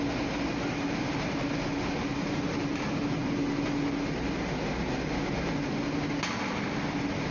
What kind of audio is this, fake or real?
real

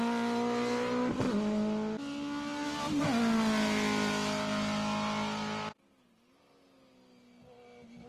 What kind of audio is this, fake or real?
real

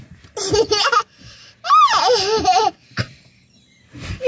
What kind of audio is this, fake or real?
real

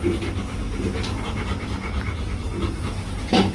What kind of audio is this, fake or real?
real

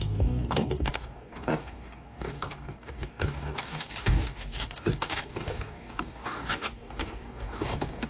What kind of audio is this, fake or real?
fake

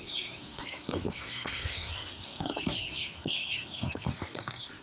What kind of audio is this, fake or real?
fake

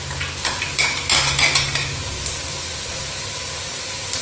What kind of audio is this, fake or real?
real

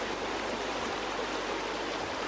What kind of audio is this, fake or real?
real